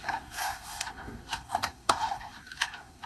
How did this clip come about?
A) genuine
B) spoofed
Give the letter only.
B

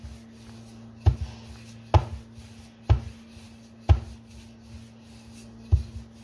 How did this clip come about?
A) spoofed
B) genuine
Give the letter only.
B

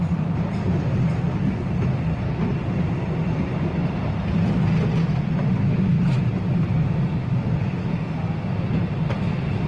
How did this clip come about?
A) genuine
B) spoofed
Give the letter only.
A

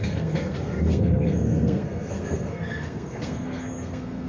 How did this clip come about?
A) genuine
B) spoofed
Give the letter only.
B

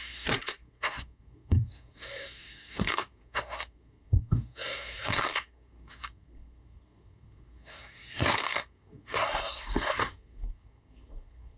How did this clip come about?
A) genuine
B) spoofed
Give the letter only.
B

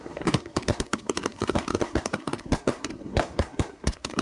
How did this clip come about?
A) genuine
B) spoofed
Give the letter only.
B